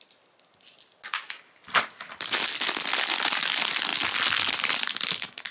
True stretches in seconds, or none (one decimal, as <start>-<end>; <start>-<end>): 0.0-5.5